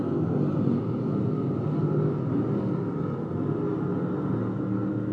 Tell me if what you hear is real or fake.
real